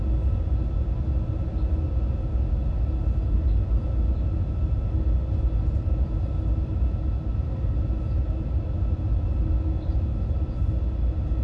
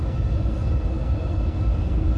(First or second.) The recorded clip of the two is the first